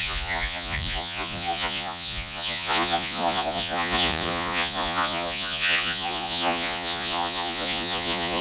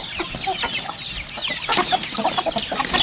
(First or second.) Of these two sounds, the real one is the second